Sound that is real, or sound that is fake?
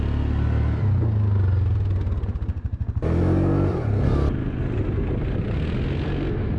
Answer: real